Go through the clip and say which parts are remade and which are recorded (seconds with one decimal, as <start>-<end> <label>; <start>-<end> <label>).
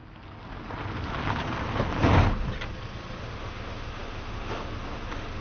0.0-3.2 recorded; 3.2-5.4 remade